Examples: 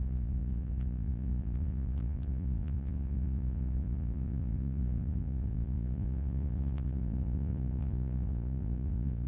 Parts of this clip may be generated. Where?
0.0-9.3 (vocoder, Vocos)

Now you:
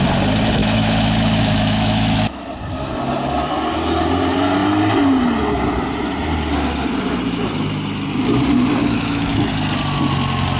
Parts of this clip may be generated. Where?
0.6-2.5 (autoencoder, DAC-VAE); 8.8-9.5